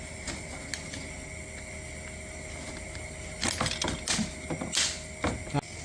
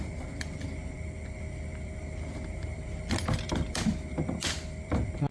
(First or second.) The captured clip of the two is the first